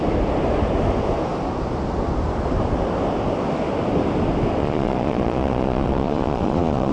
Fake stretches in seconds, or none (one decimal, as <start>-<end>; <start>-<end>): 4.6-6.9